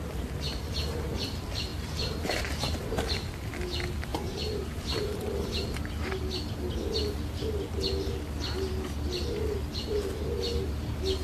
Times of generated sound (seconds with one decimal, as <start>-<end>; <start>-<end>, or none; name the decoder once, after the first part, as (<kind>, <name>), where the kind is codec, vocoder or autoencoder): 1.7-3.0 (vocoder, BigVGAN v2); 4.1-5.2